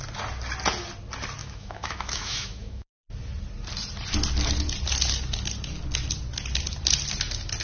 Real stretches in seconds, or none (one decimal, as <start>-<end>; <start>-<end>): 0.0-1.4; 3.1-7.6

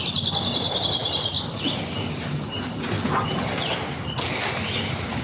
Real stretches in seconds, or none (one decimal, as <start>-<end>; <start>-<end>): 0.0-5.2

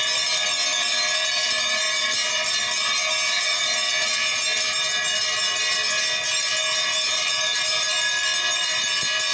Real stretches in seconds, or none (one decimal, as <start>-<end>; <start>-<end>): 0.0-9.3

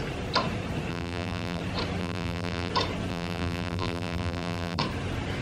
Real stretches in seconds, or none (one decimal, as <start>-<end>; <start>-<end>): 0.0-0.9; 1.6-2.0; 2.7-3.1; 4.8-5.4